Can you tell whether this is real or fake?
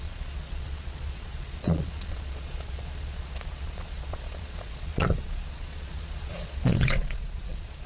fake